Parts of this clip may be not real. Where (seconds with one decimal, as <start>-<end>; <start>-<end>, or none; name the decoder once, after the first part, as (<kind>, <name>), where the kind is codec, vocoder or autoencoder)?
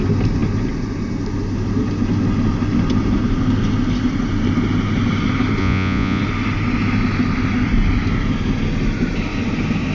5.6-6.2 (vocoder, Vocos)